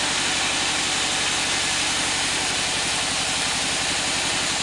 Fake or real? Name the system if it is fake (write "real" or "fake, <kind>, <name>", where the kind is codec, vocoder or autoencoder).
real